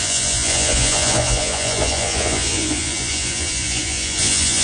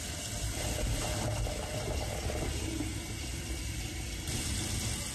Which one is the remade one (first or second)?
first